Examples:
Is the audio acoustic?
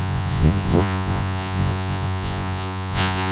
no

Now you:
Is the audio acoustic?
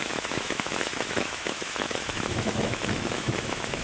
no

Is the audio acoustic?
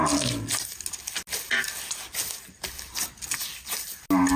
yes